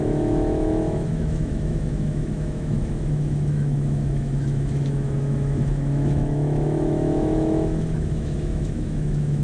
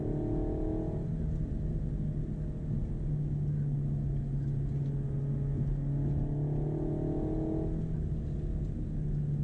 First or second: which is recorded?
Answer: second